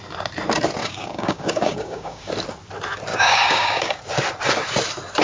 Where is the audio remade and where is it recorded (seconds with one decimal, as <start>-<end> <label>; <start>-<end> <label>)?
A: 0.0-0.8 recorded; 0.8-2.3 remade; 2.3-3.1 recorded; 3.1-4.0 remade; 4.0-5.2 recorded